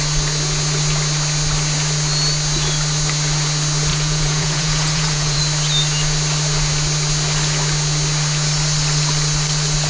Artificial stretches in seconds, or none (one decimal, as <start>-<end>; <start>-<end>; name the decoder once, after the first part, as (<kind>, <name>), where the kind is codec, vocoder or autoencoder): 3.9-5.4 (vocoder, Vocos)